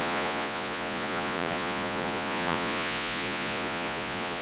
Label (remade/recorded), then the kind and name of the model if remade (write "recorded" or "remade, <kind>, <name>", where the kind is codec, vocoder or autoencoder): remade, vocoder, Vocos